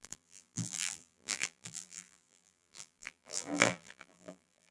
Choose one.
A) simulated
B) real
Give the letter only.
A